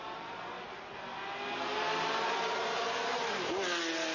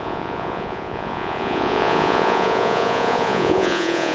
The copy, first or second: second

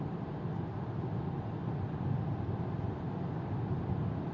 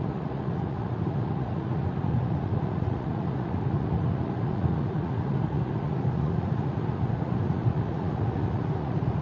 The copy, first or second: second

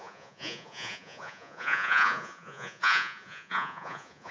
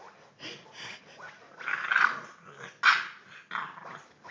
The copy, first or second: first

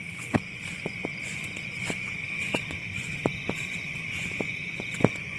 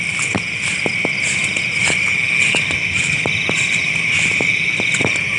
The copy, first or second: first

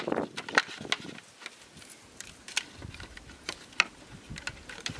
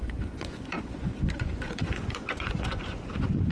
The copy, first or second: second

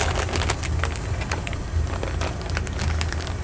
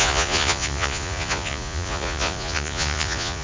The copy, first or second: second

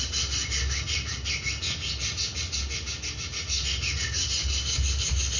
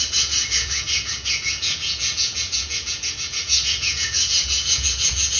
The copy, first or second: second